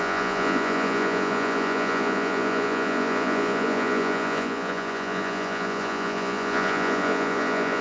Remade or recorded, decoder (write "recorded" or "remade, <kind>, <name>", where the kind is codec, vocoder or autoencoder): remade, vocoder, Vocos